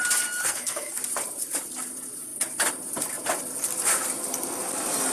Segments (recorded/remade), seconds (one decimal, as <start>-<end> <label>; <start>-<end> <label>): 0.0-0.4 recorded; 0.4-0.9 remade; 0.9-5.1 recorded